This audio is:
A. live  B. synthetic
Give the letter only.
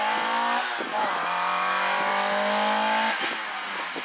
A